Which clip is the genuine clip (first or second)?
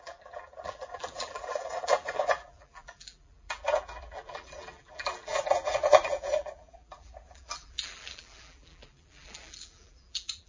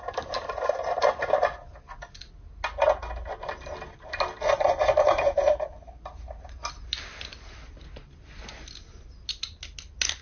second